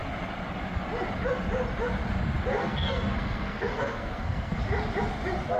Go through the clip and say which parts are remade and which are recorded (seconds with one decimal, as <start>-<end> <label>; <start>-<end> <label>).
0.0-2.6 recorded; 2.6-4.6 remade; 4.6-5.6 recorded